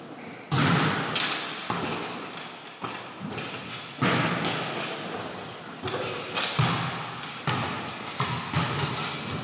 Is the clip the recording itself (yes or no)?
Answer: yes